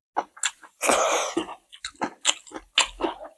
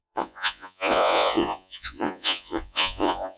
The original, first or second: first